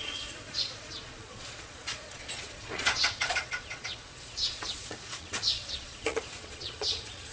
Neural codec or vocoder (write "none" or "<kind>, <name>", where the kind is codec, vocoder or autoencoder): vocoder, Vocos